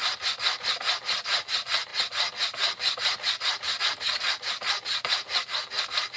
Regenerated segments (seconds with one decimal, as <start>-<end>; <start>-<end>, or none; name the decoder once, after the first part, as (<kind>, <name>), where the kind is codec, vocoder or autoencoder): none